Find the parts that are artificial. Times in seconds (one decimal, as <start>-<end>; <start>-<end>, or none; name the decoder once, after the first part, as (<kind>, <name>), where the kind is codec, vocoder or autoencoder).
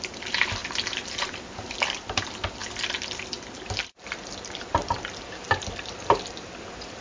0.0-7.0 (vocoder, BigVGAN v2)